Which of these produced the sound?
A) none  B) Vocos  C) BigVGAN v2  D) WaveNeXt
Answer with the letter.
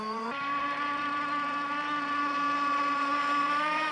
C